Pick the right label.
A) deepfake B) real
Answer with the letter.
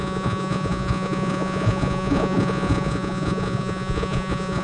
A